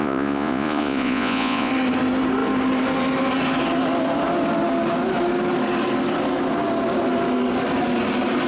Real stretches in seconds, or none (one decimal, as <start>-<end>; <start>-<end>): 1.7-8.5